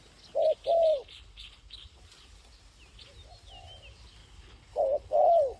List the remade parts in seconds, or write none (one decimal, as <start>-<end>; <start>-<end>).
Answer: 0.9-2.0; 4.2-5.6